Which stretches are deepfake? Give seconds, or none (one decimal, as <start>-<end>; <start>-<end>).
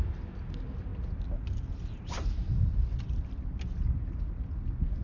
none